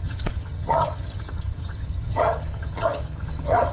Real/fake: fake